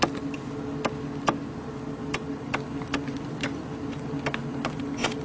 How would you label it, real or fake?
real